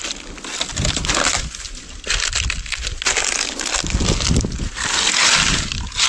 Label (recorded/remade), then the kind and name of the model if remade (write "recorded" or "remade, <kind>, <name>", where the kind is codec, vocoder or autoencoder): recorded